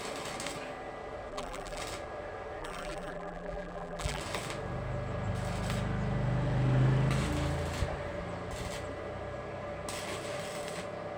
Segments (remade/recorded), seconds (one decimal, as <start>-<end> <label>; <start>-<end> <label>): 0.0-1.3 recorded; 1.3-1.8 remade; 1.8-2.6 recorded; 2.6-4.2 remade; 4.2-11.2 recorded